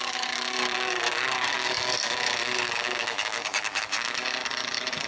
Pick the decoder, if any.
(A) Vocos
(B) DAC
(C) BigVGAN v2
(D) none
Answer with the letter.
B